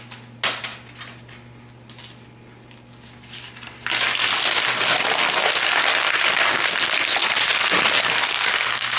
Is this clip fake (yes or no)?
no